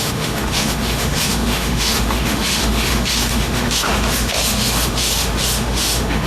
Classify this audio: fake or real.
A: fake